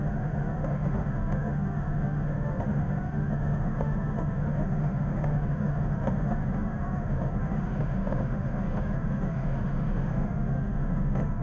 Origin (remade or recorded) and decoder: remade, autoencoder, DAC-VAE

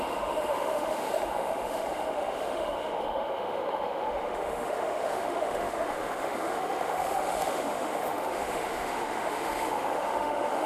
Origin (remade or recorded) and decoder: remade, autoencoder, DAC-VAE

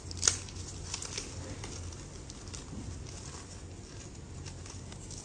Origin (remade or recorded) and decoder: recorded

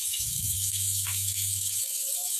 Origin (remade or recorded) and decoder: remade, autoencoder, DAC-VAE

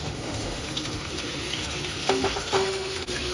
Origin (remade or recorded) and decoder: remade, autoencoder, DAC-VAE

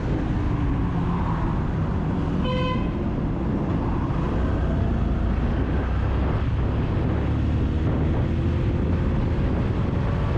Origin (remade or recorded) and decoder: recorded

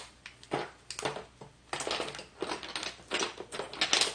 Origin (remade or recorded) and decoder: recorded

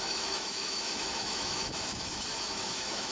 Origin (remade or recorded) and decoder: remade, autoencoder, DAC-VAE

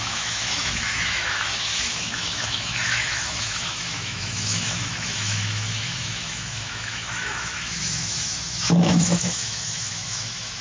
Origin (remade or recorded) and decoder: remade, autoencoder, DAC-VAE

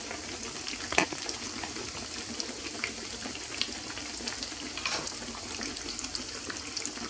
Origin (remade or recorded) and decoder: recorded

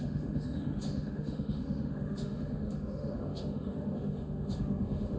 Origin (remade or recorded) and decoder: remade, autoencoder, DAC-VAE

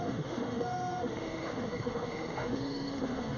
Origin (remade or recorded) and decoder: remade, autoencoder, DAC-VAE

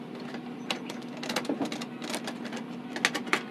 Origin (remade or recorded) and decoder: recorded